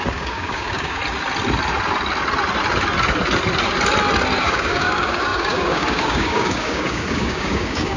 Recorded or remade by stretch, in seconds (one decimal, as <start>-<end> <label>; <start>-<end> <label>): 0.0-1.0 remade; 1.0-4.4 recorded; 4.4-8.0 remade